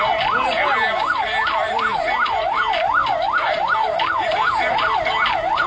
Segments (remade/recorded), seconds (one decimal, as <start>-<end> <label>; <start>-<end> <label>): 0.0-5.7 recorded